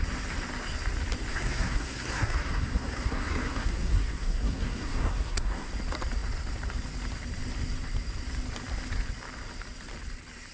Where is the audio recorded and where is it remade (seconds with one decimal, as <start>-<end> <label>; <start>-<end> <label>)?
0.0-1.3 recorded; 1.3-5.7 remade; 5.7-10.5 recorded